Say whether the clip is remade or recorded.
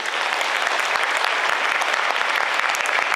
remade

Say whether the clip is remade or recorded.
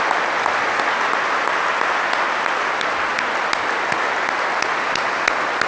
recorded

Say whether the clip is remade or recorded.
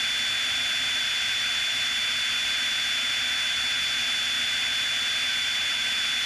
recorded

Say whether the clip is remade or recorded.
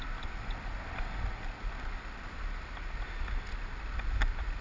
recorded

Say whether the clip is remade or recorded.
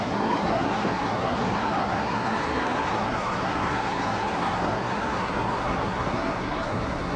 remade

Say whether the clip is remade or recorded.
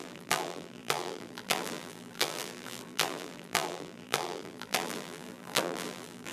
remade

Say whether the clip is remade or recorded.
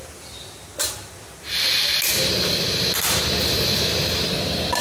recorded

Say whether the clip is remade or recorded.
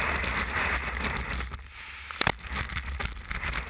recorded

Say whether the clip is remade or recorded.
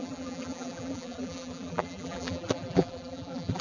remade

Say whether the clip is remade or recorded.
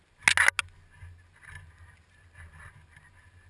recorded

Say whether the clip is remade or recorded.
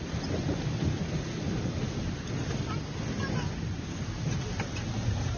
recorded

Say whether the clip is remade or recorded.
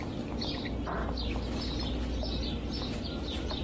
recorded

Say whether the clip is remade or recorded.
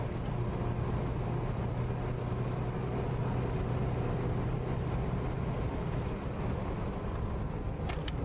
recorded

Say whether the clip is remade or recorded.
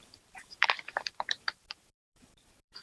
remade